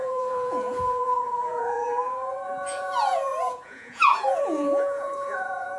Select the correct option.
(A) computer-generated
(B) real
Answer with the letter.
A